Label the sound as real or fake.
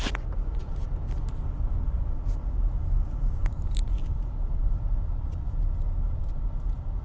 real